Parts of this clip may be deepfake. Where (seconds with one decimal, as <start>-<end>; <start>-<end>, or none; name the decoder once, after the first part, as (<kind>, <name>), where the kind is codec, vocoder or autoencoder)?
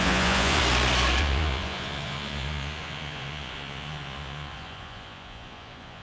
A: 0.0-0.6 (vocoder, Vocos); 1.2-6.0